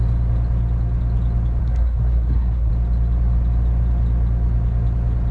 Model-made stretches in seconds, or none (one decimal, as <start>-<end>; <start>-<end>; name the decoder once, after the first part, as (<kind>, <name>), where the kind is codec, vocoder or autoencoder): 1.6-2.7 (codec, SNAC)